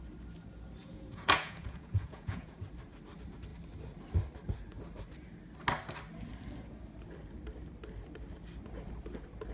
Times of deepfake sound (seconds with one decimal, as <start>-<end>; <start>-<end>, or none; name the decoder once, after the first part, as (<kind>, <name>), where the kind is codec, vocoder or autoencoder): 0.8-2.6 (vocoder, Vocos)